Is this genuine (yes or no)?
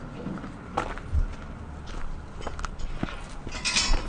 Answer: yes